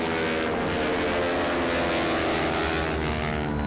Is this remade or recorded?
recorded